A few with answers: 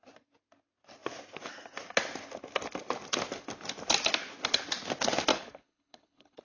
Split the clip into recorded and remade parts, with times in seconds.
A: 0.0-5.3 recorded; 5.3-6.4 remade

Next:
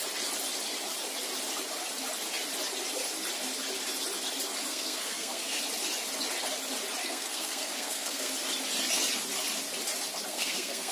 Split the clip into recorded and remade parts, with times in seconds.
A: 0.0-4.7 recorded; 4.7-5.6 remade; 5.6-7.0 recorded; 7.0-8.3 remade; 8.3-10.3 recorded; 10.3-10.9 remade

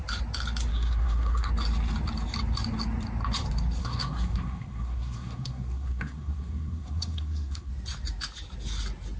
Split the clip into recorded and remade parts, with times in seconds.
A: 0.0-0.7 recorded; 0.7-1.5 remade; 1.5-3.8 recorded; 3.8-7.7 remade; 7.7-9.2 recorded

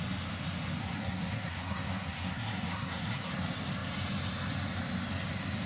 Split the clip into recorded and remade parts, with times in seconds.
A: 0.0-0.8 recorded; 0.8-3.3 remade; 3.3-5.7 recorded

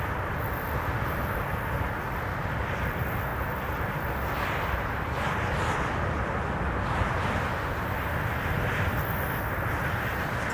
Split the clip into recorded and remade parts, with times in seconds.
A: 0.0-10.5 recorded

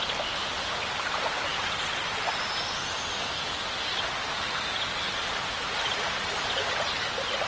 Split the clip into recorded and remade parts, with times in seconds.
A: 0.0-7.5 recorded